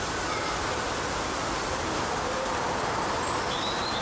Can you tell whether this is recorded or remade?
recorded